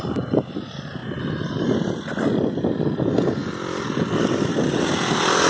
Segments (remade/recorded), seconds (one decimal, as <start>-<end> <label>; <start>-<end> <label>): 0.0-5.5 recorded